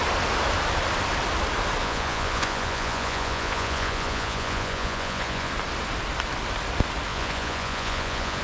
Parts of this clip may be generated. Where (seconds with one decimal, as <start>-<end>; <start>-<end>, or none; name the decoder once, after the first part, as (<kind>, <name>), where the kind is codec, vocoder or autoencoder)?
1.8-5.5 (vocoder, Vocos); 7.1-8.4